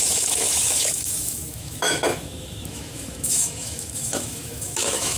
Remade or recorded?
remade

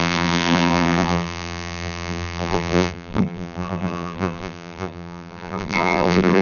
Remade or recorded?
remade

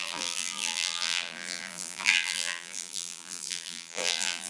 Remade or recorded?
remade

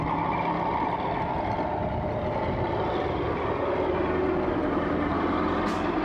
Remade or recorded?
recorded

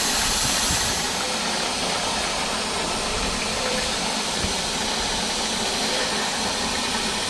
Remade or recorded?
remade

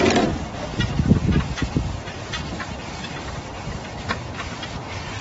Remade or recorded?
recorded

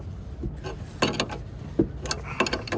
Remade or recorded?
recorded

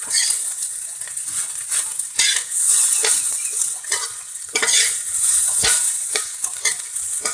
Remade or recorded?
remade